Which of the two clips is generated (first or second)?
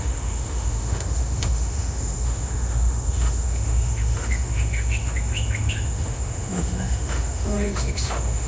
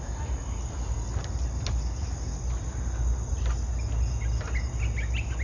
first